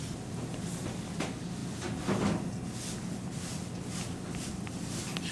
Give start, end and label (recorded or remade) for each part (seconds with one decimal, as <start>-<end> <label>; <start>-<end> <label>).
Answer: 0.0-5.3 recorded